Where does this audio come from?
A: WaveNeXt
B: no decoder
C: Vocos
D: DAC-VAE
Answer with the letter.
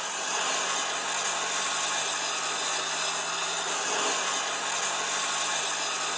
B